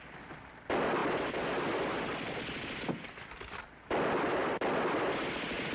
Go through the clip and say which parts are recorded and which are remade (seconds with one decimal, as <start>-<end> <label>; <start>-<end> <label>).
0.0-5.7 recorded